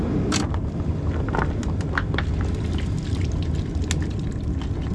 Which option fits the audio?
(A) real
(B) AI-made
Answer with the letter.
A